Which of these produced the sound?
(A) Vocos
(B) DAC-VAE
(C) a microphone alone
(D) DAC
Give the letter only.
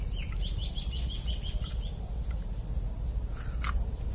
C